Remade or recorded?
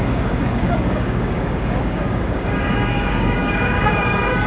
remade